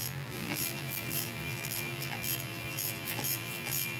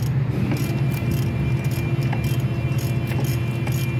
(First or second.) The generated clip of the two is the first